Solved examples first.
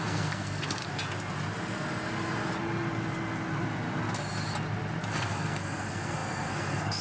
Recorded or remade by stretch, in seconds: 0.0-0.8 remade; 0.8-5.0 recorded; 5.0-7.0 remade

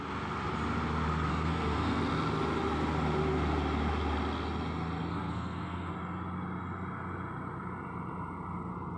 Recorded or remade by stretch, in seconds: 0.0-1.3 recorded; 1.3-2.0 remade; 2.0-5.1 recorded; 5.1-5.9 remade; 5.9-9.0 recorded

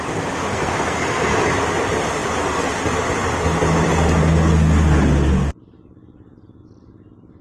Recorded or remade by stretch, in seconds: 0.0-0.5 recorded; 0.5-1.3 remade; 1.3-7.4 recorded

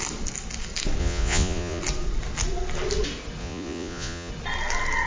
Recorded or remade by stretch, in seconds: 0.0-1.0 recorded; 1.0-1.8 remade; 1.8-3.4 recorded; 3.4-4.3 remade; 4.3-5.1 recorded

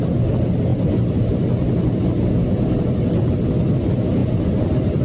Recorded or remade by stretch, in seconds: 0.0-5.0 recorded

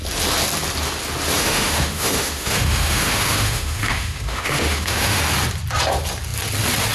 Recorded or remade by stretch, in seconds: 0.0-1.4 recorded; 1.4-5.2 remade; 5.2-6.9 recorded

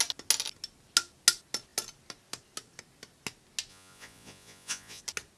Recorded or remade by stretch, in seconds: 0.0-3.7 recorded; 3.7-5.0 remade; 5.0-5.4 recorded

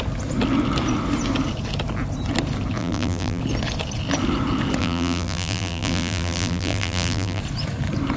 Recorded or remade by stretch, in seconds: 0.0-2.8 recorded; 2.8-3.4 remade; 3.4-4.8 recorded; 4.8-7.4 remade; 7.4-8.2 recorded